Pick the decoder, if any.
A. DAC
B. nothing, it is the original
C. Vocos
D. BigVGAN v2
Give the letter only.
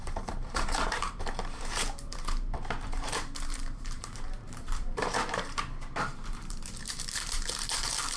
D